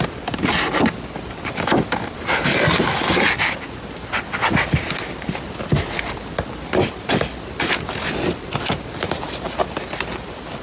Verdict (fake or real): real